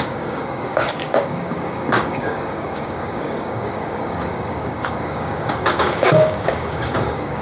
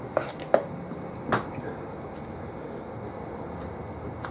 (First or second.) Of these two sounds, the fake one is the first